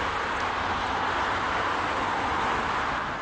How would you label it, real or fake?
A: real